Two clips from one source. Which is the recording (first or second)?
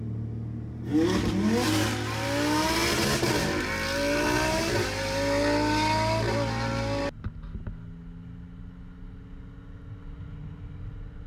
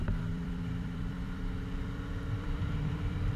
first